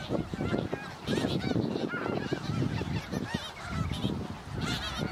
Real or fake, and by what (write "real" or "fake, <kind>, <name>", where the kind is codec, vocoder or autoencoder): real